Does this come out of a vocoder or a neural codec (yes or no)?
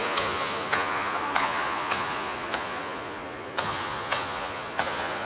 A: yes